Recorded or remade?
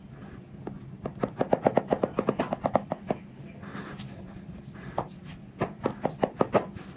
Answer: recorded